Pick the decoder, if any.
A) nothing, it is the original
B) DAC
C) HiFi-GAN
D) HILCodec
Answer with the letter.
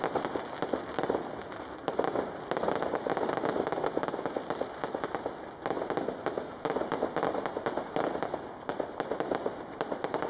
A